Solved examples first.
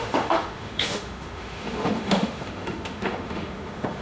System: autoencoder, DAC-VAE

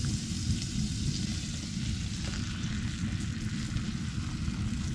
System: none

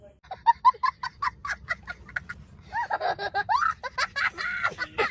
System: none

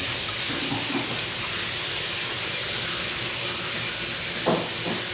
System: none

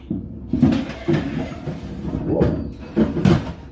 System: vocoder, BigVGAN v2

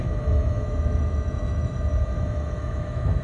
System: autoencoder, DAC-VAE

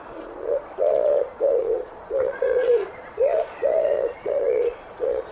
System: vocoder, Vocos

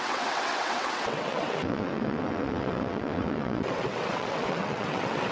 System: vocoder, WaveNeXt